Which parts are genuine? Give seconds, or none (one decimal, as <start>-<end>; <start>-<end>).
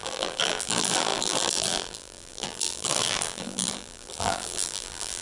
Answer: none